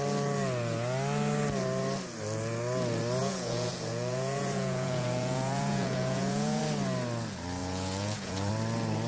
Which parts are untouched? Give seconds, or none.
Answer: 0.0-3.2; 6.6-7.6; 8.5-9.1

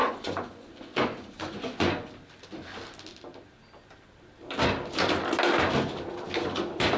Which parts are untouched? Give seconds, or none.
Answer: 2.1-7.0

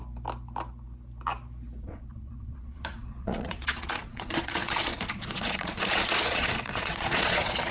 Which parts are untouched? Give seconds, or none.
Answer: 0.0-1.8

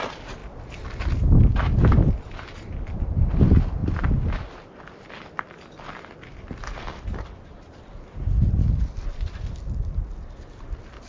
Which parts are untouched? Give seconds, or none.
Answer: 0.0-11.1

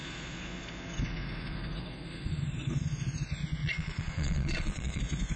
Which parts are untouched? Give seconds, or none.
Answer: 0.0-3.6; 5.0-5.4

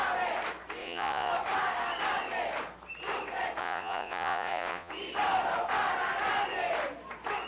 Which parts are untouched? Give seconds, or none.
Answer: 0.0-0.8; 1.3-3.6; 4.9-7.5